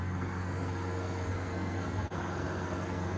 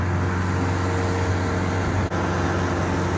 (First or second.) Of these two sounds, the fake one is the first